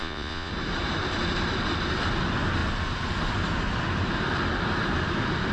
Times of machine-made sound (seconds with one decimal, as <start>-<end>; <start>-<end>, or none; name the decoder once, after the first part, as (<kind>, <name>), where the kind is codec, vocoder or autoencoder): 0.0-0.5 (vocoder, Vocos)